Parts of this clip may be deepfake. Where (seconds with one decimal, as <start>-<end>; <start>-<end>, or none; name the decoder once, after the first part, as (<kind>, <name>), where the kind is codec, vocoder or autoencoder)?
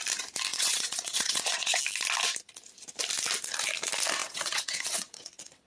0.5-1.8 (vocoder, WaveNeXt); 4.2-5.7